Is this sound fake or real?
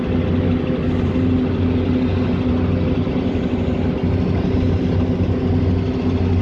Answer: real